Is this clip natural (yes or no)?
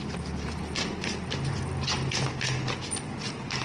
yes